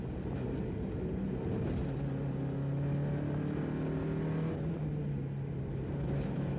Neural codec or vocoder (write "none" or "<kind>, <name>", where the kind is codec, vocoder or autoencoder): none